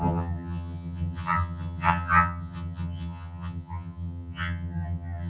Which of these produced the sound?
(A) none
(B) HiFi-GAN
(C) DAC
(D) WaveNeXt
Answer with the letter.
B